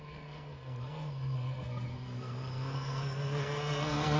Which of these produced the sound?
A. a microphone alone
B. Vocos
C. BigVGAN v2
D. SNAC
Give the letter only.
D